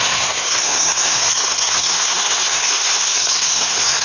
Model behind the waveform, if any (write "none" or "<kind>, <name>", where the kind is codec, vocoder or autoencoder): codec, SNAC